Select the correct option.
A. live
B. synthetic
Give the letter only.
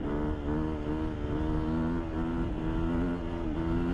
A